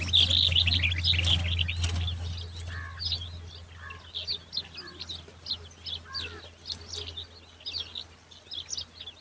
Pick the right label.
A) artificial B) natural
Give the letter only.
B